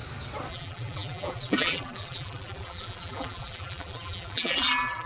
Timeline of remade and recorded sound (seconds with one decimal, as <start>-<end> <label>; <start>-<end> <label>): 0.0-0.5 recorded; 0.5-5.1 remade